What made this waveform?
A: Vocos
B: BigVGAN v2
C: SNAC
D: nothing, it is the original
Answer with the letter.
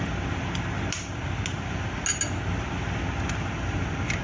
D